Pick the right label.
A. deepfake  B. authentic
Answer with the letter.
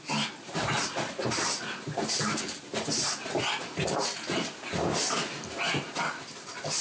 B